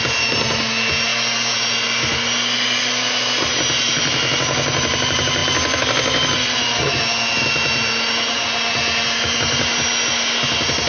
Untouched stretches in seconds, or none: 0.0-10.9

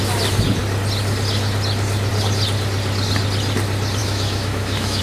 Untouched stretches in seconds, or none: 0.0-4.0

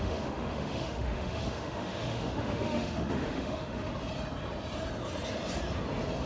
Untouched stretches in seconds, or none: 3.9-6.3

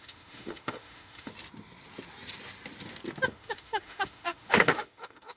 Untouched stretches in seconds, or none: 1.3-3.3

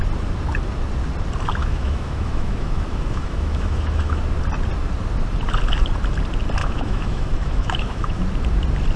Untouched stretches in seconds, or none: 0.0-1.6; 4.2-6.6; 8.2-9.0